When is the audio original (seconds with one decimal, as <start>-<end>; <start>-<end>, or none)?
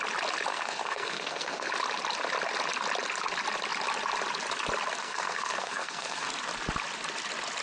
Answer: 0.0-0.5; 1.7-5.0; 6.3-7.6